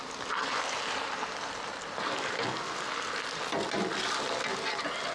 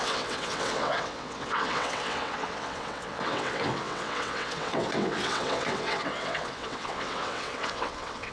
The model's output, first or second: second